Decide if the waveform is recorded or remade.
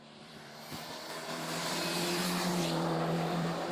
remade